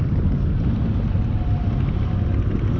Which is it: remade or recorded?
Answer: recorded